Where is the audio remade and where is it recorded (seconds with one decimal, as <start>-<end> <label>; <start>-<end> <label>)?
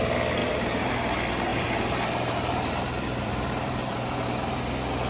0.0-0.4 recorded; 0.4-0.9 remade; 0.9-1.5 recorded; 1.5-4.6 remade; 4.6-5.1 recorded